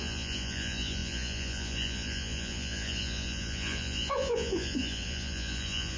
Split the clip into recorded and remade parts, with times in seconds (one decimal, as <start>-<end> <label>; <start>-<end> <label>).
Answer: 0.0-6.0 remade